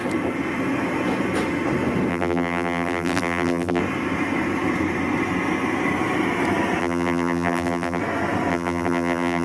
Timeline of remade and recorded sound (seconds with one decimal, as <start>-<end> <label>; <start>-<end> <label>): 0.0-2.1 recorded; 2.1-3.8 remade; 3.8-6.8 recorded; 6.8-8.0 remade; 8.0-8.5 recorded; 8.5-9.4 remade